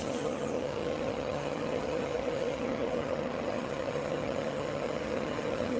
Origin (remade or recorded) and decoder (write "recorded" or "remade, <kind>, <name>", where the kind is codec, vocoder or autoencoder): remade, vocoder, HiFi-GAN